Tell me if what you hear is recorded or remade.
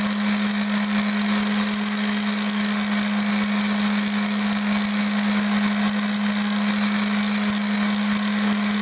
recorded